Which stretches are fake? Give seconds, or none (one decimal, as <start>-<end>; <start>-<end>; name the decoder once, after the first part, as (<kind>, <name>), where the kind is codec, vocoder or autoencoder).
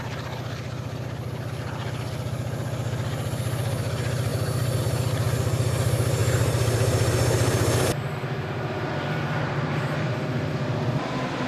6.2-10.1 (vocoder, BigVGAN v2)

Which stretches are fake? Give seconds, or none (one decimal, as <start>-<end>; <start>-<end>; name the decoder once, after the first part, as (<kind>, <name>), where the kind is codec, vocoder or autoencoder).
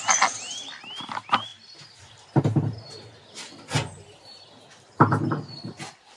none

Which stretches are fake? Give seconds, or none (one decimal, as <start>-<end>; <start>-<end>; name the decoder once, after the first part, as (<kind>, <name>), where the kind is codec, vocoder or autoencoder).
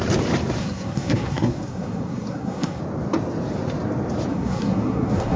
0.6-2.8 (codec, SNAC); 4.3-5.4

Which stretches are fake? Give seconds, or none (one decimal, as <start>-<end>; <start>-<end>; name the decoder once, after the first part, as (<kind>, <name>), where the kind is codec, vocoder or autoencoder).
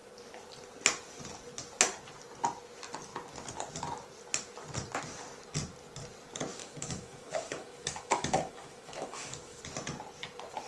6.5-9.6 (autoencoder, DAC-VAE)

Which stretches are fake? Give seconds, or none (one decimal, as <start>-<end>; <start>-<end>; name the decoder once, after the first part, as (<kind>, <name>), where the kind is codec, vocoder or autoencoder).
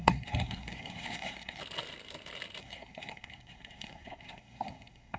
0.0-1.6 (codec, SNAC); 2.6-5.2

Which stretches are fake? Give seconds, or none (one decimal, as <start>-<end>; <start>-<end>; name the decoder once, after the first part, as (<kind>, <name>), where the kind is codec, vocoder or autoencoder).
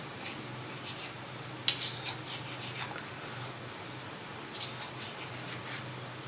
none